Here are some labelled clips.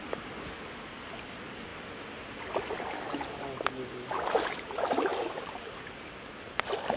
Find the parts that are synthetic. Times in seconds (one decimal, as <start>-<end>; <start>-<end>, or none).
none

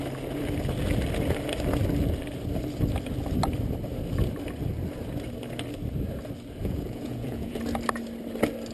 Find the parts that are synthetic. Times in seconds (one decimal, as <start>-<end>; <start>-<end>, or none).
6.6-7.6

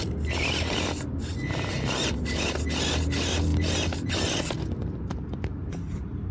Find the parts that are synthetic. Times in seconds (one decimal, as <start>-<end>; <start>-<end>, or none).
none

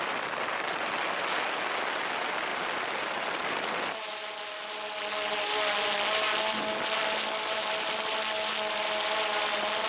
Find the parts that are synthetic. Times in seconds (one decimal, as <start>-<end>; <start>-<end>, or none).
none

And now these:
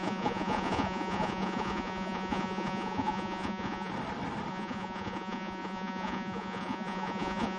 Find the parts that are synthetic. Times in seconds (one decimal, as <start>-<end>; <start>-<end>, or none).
0.0-3.9; 4.5-7.6

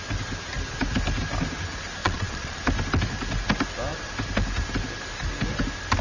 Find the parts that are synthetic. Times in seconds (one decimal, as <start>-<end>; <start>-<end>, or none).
2.0-2.6

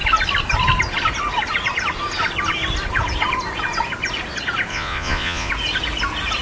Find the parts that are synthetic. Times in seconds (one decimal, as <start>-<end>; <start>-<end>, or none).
4.7-5.5

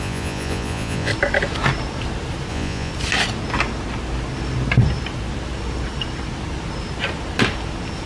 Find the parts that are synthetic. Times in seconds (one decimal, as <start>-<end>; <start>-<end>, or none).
0.0-1.1; 2.5-2.9